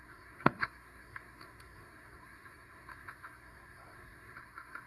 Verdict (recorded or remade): remade